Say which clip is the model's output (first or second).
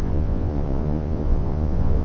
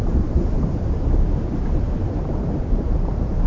first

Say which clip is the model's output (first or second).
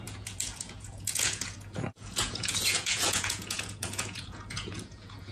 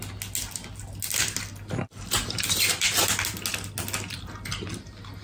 first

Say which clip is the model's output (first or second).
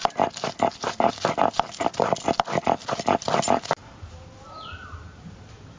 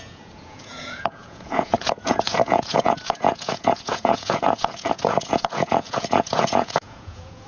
second